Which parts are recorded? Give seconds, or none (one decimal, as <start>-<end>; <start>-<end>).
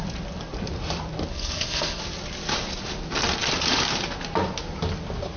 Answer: 0.0-1.3; 2.0-5.4